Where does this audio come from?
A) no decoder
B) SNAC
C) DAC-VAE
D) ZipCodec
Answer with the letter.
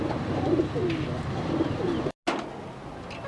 A